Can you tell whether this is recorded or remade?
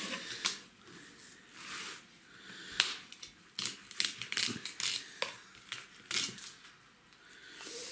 recorded